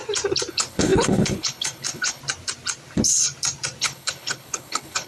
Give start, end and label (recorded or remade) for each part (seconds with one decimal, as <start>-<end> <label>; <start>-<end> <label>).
0.0-0.5 recorded; 0.5-2.2 remade; 2.2-3.8 recorded; 3.8-5.1 remade